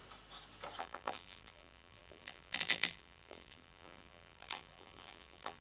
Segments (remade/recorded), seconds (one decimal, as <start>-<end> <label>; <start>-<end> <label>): 0.0-0.8 recorded; 0.8-5.6 remade